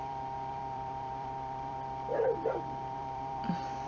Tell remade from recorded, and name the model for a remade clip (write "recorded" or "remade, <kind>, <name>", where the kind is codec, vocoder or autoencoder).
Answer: remade, vocoder, BigVGAN v2